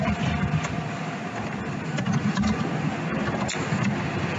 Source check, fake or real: real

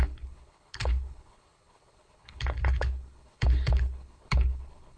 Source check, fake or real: fake